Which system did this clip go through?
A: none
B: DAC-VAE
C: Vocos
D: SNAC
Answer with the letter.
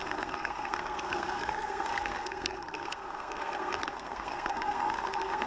D